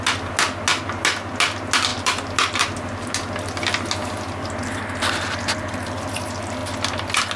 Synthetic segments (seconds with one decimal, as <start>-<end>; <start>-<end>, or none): none